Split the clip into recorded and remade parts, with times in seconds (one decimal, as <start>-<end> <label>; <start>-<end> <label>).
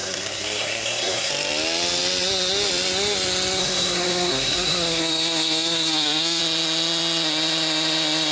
0.0-1.3 remade; 1.3-3.6 recorded; 3.6-6.4 remade; 6.4-8.3 recorded